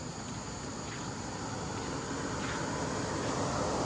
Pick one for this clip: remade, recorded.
recorded